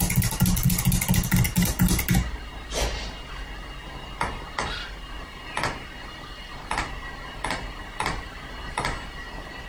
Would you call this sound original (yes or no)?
yes